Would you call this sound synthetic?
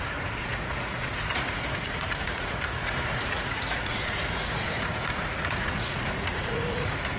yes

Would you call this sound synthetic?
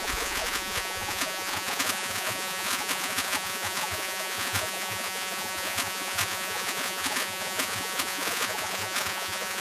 yes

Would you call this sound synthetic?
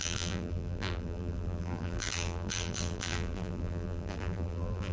yes